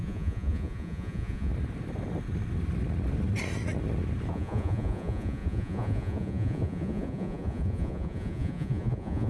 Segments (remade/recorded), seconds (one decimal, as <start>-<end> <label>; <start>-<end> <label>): 0.0-1.5 remade; 1.5-4.3 recorded; 4.3-9.3 remade